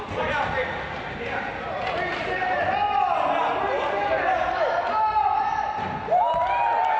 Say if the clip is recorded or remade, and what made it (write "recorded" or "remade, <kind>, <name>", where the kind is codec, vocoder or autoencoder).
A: recorded